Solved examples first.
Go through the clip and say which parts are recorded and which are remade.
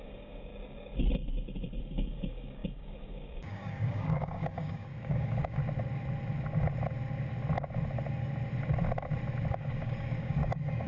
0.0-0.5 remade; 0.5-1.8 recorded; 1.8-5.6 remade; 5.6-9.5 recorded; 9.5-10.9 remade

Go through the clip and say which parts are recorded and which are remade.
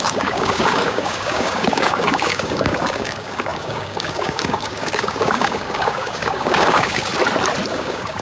0.0-7.1 remade; 7.1-7.7 recorded; 7.7-8.2 remade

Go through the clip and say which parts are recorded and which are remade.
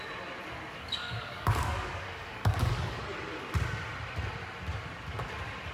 0.0-0.7 recorded; 0.7-3.0 remade; 3.0-5.7 recorded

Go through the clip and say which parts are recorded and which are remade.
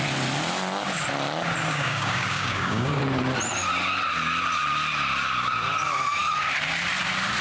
0.0-1.7 recorded; 1.7-3.0 remade; 3.0-7.4 recorded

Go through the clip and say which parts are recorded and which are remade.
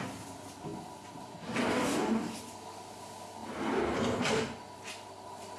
0.0-1.6 recorded; 1.6-2.3 remade; 2.3-5.6 recorded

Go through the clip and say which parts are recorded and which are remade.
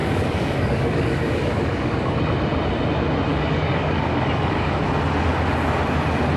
0.0-2.2 remade; 2.2-3.3 recorded; 3.3-4.8 remade; 4.8-6.4 recorded